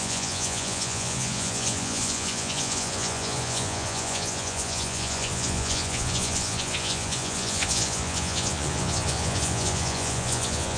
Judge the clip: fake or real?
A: fake